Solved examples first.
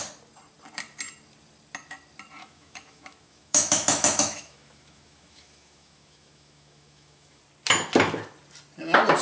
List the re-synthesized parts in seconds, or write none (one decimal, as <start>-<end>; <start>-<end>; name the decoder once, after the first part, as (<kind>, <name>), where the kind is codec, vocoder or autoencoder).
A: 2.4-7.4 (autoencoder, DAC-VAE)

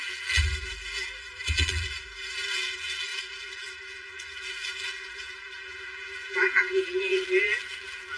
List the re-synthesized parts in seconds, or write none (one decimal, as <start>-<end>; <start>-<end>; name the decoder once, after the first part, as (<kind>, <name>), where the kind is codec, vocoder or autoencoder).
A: 0.0-8.2 (vocoder, BigVGAN v2)

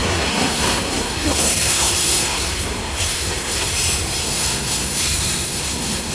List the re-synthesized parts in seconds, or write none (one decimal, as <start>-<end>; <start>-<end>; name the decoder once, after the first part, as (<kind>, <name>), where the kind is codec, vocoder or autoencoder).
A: 0.0-3.7 (codec, SNAC); 4.2-6.1

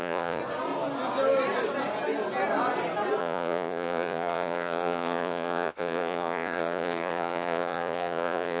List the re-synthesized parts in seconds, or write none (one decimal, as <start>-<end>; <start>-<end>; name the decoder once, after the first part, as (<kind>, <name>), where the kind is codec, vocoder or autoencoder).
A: 0.0-0.4 (vocoder, Vocos); 3.2-8.6

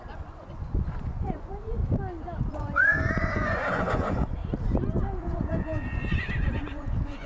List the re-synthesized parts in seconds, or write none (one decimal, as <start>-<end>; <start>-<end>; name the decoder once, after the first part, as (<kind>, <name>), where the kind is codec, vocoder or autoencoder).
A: 0.0-1.8 (vocoder, Vocos); 2.5-4.4; 5.2-7.3

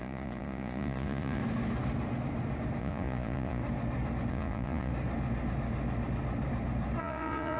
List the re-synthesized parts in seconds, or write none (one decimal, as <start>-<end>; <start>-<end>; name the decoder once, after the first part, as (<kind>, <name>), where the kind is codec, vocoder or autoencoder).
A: 0.0-1.4 (vocoder, Vocos); 2.8-3.6; 4.3-4.9; 7.0-7.6

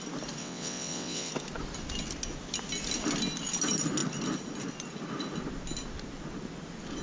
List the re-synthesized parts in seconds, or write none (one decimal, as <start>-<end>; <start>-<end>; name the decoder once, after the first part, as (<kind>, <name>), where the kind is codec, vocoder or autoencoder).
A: 0.4-1.3 (vocoder, WaveNeXt)